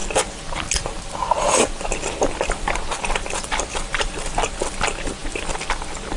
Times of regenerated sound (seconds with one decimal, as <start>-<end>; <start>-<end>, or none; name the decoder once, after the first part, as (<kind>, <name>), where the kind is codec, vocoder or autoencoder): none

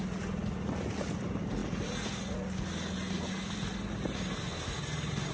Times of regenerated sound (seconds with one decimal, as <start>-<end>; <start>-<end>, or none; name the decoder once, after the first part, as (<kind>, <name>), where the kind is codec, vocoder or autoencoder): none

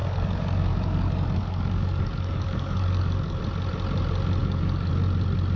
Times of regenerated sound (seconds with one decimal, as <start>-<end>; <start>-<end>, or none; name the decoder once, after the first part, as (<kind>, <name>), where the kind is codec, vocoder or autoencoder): 0.0-3.4 (codec, DAC); 4.4-4.9

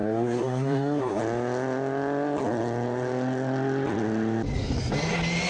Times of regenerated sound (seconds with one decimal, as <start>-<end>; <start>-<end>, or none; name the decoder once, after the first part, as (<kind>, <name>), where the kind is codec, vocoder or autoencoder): 0.0-1.2 (codec, SNAC)